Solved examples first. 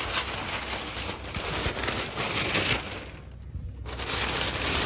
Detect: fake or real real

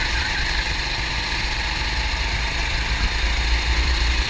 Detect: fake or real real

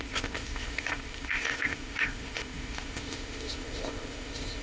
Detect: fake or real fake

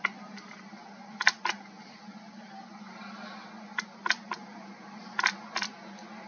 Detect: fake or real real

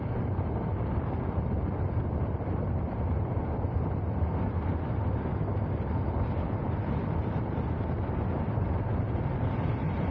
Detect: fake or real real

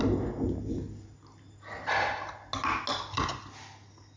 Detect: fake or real real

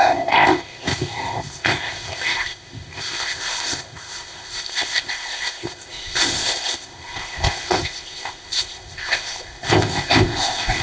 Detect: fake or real fake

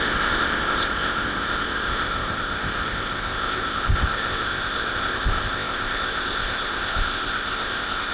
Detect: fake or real fake